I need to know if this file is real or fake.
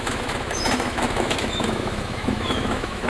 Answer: fake